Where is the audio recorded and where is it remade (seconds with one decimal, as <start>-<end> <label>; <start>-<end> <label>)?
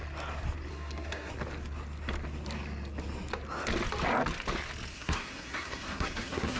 0.0-0.7 recorded; 0.7-1.3 remade; 1.3-4.9 recorded; 4.9-6.6 remade